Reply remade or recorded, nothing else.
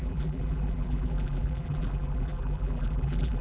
remade